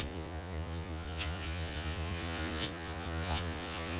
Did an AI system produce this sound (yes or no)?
yes